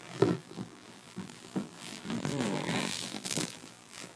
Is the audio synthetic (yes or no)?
yes